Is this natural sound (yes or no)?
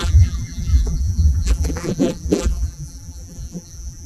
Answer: no